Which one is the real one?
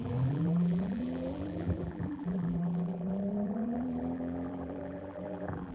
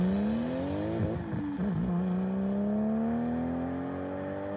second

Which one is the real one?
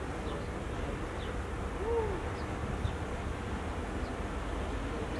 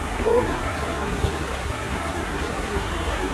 first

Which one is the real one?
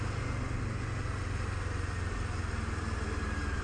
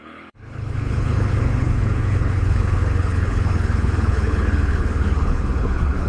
first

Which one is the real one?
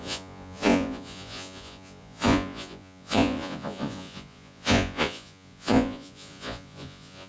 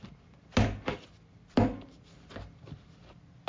second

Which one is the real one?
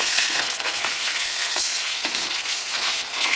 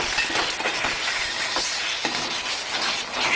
second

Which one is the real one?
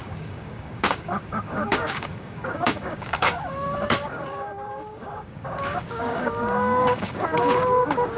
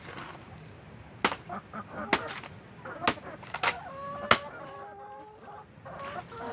second